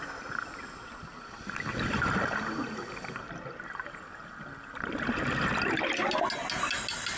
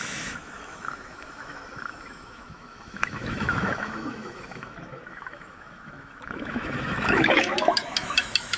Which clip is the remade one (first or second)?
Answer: second